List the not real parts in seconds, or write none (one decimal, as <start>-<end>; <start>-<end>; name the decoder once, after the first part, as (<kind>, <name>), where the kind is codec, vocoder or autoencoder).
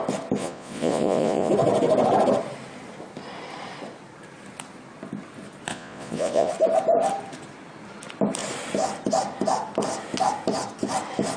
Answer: 0.4-1.5 (vocoder, Vocos); 5.7-6.5